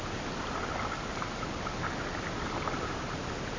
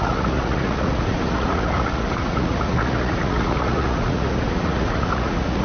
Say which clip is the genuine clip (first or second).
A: first